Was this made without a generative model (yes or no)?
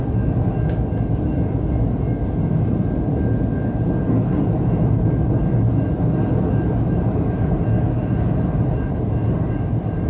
yes